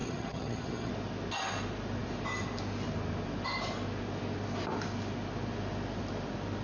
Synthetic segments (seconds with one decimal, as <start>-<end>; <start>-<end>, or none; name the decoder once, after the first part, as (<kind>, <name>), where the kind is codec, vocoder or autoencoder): 0.0-0.9 (vocoder, HiFi-GAN)